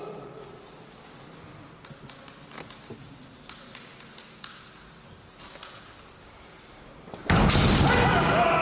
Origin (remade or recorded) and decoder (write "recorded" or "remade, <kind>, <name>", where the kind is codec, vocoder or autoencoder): recorded